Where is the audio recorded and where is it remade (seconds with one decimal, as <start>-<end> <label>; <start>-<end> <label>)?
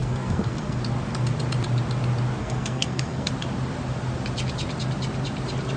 0.0-0.8 remade; 0.8-2.4 recorded; 2.4-3.3 remade; 3.3-5.8 recorded